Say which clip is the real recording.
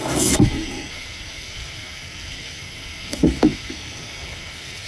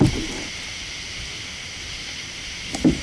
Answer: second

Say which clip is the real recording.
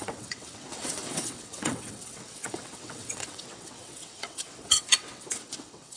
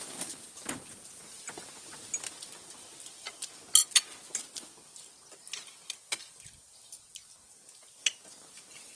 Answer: second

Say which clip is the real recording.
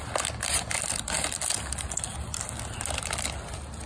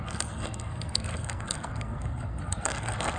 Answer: first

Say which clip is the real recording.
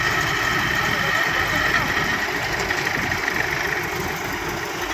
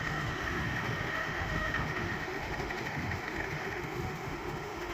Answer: first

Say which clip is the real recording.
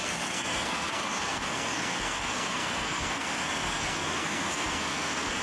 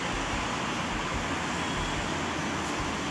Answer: second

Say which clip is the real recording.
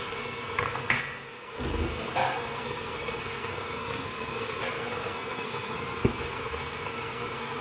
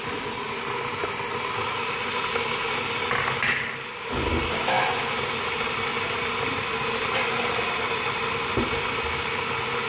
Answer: second